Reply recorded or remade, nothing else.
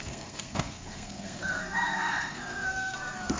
remade